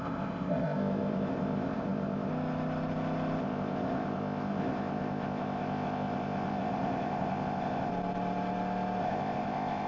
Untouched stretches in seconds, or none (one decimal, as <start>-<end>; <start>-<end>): 2.3-3.4; 7.9-9.0